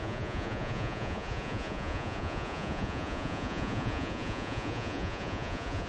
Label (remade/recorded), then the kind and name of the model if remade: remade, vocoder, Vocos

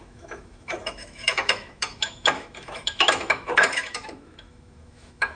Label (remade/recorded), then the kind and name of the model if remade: remade, autoencoder, DAC-VAE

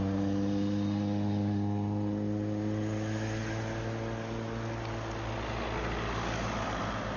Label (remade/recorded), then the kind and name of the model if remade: recorded